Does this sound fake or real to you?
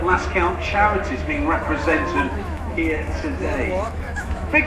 fake